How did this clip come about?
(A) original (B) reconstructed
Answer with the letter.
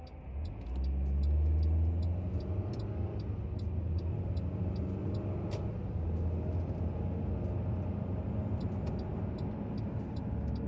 A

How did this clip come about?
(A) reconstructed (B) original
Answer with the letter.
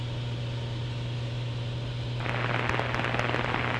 B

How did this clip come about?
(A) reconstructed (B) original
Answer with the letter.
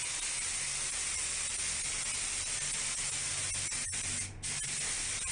B